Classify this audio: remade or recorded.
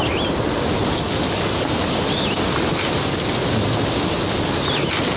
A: recorded